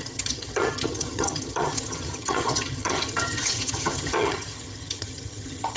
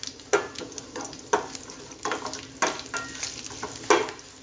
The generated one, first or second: first